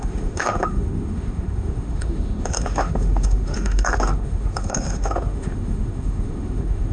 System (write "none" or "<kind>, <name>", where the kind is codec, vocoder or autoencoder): autoencoder, DAC-VAE